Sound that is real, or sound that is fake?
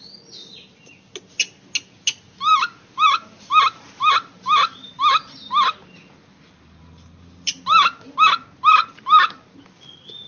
real